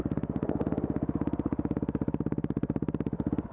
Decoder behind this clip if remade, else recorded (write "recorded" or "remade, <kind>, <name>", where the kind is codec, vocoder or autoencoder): recorded